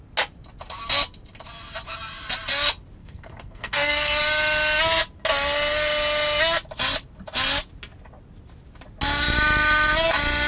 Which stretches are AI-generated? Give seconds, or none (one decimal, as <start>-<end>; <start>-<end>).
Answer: 3.0-4.2